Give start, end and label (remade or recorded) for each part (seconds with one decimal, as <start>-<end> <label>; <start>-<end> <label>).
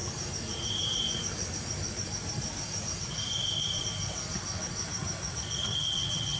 0.0-5.7 recorded; 5.7-6.4 remade